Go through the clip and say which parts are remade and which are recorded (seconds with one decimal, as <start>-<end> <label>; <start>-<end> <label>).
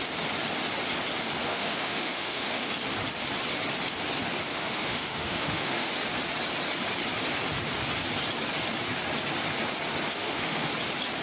0.0-1.5 recorded; 1.5-2.7 remade; 2.7-4.5 recorded; 4.5-5.9 remade; 5.9-10.1 recorded; 10.1-10.7 remade; 10.7-11.2 recorded